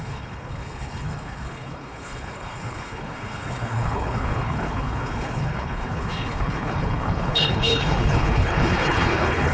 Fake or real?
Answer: fake